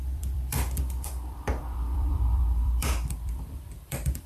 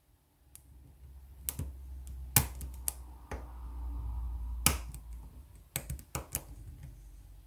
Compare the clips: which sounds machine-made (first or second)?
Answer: first